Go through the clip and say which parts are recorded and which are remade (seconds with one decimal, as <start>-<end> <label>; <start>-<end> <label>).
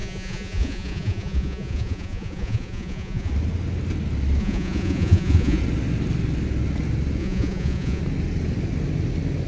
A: 0.0-3.3 remade; 3.3-4.4 recorded; 4.4-5.6 remade; 5.6-7.2 recorded; 7.2-8.0 remade; 8.0-9.5 recorded